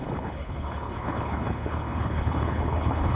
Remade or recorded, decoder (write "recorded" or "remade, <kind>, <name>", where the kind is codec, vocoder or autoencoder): remade, codec, HILCodec